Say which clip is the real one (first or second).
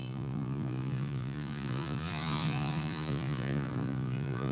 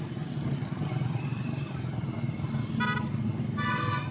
second